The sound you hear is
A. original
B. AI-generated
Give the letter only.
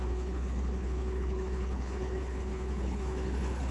B